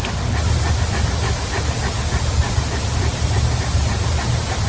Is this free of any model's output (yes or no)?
yes